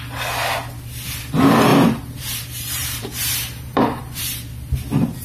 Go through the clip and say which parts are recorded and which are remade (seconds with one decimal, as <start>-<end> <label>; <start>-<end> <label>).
0.0-1.7 recorded; 1.7-4.8 remade; 4.8-5.2 recorded